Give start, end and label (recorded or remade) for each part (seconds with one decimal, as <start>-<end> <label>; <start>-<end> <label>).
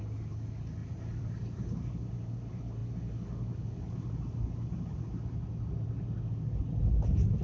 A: 0.0-0.8 recorded; 0.8-2.0 remade; 2.0-7.4 recorded